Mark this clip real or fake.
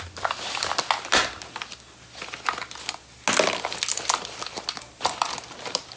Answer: real